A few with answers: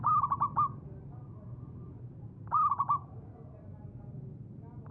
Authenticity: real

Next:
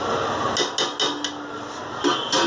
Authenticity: real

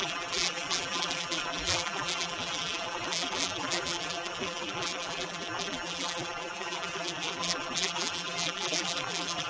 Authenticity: fake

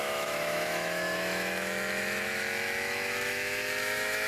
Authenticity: fake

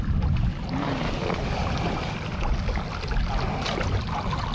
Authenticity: real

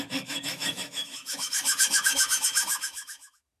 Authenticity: fake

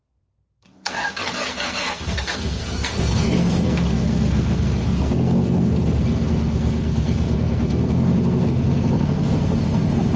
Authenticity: fake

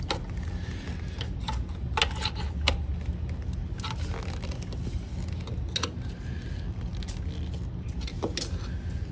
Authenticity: real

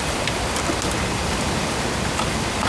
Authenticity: fake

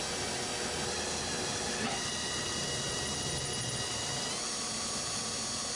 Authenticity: real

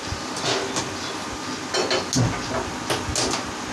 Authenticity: real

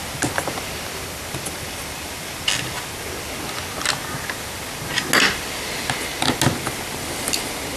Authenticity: real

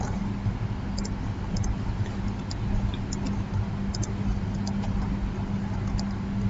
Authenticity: real